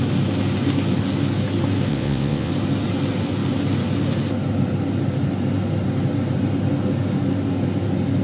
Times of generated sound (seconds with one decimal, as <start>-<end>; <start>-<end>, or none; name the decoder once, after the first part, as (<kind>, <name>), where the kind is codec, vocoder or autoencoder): 1.9-2.5 (vocoder, WaveNeXt)